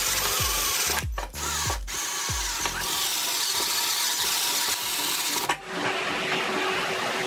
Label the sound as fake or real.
real